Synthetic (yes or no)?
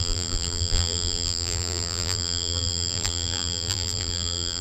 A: yes